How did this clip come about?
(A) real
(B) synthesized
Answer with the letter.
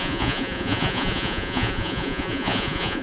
B